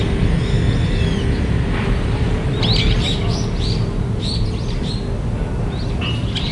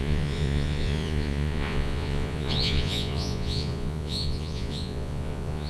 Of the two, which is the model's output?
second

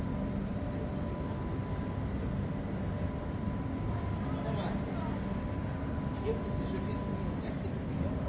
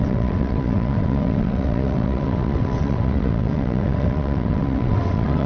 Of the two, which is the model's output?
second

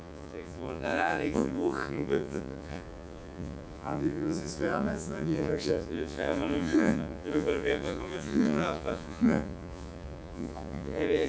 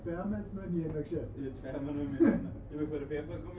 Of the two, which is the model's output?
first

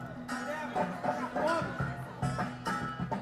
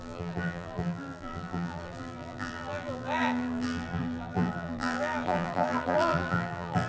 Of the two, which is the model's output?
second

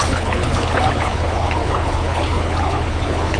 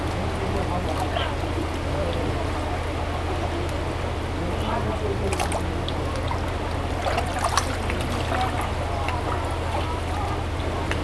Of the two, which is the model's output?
first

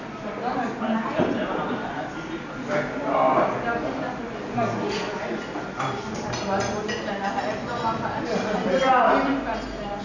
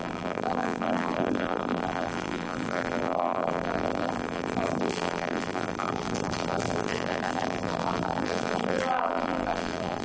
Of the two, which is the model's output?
second